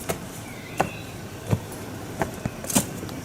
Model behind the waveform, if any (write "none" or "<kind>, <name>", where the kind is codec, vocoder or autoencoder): vocoder, BigVGAN v2